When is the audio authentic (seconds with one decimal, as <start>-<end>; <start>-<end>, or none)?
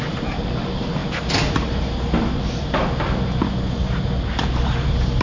0.0-5.2